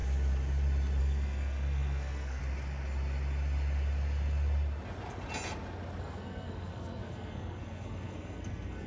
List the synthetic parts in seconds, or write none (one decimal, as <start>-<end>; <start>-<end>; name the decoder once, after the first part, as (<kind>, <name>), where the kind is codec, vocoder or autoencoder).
1.0-2.4 (codec, SNAC); 6.0-8.9